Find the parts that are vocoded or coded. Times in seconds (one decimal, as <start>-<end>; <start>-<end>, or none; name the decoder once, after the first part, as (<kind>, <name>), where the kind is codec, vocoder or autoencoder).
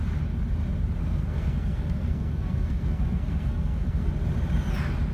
1.0-4.1 (codec, SNAC)